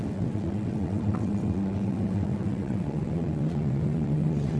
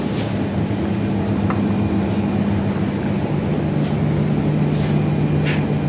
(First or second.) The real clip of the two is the second